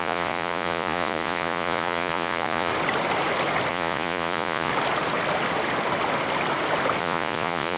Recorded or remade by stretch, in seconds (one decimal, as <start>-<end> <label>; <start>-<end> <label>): 0.0-2.7 remade; 2.7-3.7 recorded; 3.7-4.7 remade; 4.7-7.0 recorded; 7.0-7.8 remade